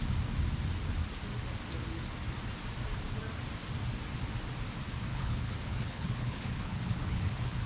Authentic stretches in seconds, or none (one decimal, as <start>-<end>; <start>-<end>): 0.0-5.1